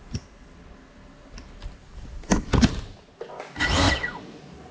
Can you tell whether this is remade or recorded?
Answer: recorded